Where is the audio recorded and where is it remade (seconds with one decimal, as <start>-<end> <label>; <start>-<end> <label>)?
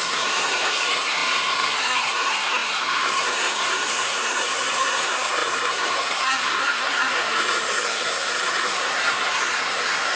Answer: 0.0-10.2 remade